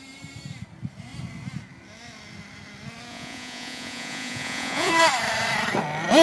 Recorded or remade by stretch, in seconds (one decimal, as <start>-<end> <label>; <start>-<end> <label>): 0.0-3.1 recorded; 3.1-4.9 remade; 4.9-6.2 recorded